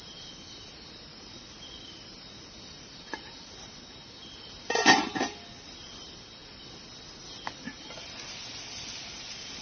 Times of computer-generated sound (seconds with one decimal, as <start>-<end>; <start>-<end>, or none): none